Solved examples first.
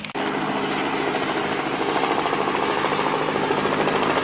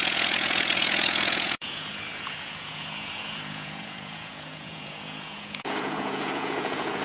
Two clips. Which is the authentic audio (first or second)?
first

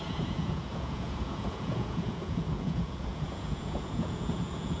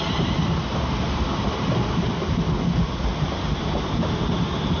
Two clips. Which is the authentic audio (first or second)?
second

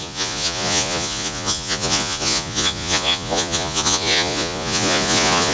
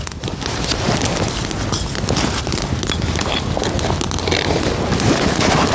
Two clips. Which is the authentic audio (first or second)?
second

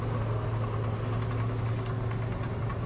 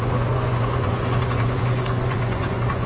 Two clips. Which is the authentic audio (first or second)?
first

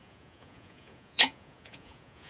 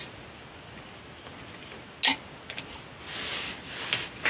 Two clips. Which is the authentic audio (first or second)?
second